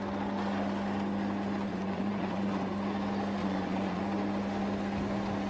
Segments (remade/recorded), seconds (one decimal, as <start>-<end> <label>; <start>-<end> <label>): 0.0-1.7 recorded; 1.7-2.7 remade; 2.7-3.4 recorded; 3.4-4.0 remade; 4.0-5.5 recorded